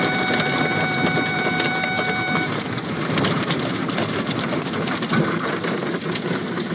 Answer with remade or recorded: remade